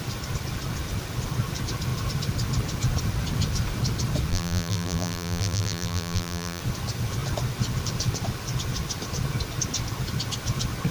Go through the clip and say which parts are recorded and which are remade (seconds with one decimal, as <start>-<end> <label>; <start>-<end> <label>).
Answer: 0.0-4.3 recorded; 4.3-6.6 remade; 6.6-10.9 recorded